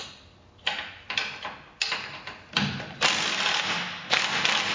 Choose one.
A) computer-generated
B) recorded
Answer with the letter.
A